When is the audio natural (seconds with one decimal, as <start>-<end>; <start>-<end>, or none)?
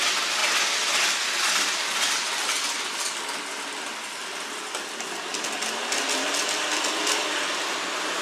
0.0-8.2